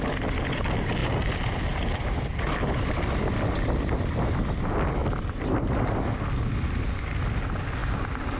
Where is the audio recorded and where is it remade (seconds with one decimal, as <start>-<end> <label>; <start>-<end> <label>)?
0.0-8.4 recorded

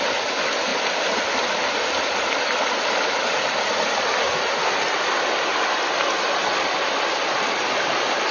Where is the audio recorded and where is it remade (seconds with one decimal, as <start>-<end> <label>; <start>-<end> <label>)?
0.0-8.3 recorded

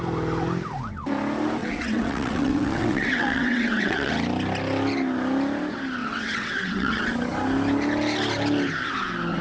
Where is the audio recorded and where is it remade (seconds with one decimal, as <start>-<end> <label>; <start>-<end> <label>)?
0.0-1.6 recorded; 1.6-4.1 remade; 4.1-6.0 recorded; 6.0-7.1 remade; 7.1-9.4 recorded

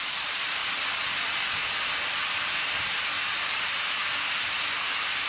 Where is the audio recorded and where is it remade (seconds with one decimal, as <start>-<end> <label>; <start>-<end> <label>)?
0.0-0.6 remade; 0.6-1.2 recorded; 1.2-1.6 remade; 1.6-3.4 recorded; 3.4-4.0 remade; 4.0-5.3 recorded

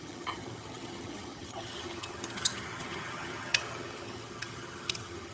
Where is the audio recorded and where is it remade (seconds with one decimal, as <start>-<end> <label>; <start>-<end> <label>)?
0.0-5.3 remade

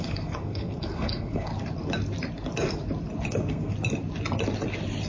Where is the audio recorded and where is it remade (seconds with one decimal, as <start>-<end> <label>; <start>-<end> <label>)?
0.0-1.5 remade; 1.5-3.3 recorded; 3.3-3.7 remade; 3.7-5.1 recorded